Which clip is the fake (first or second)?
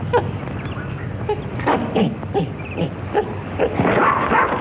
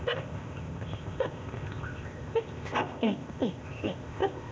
second